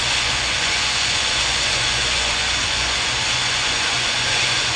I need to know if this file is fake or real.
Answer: fake